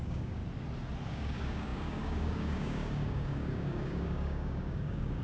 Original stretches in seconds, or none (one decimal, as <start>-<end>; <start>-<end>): 0.4-1.1